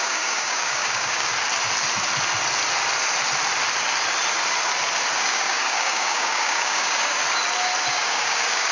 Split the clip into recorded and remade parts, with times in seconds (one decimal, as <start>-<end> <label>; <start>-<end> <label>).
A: 0.0-1.3 remade; 1.3-5.2 recorded; 5.2-7.2 remade; 7.2-7.9 recorded; 7.9-8.7 remade